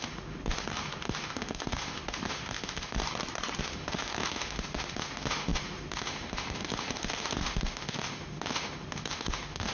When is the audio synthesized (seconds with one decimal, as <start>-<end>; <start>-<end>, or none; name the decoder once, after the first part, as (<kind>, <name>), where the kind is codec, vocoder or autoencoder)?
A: 0.0-3.0 (autoencoder, DAC-VAE); 3.6-9.7

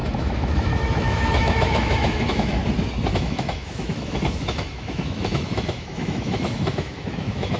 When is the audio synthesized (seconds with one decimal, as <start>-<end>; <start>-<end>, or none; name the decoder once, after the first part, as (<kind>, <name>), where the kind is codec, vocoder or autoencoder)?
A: 0.0-2.6 (autoencoder, DAC-VAE); 3.1-7.6